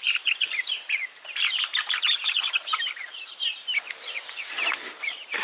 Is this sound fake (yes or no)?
yes